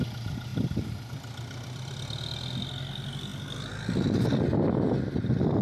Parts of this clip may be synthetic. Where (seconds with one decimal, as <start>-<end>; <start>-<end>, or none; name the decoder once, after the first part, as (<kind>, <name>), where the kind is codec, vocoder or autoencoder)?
none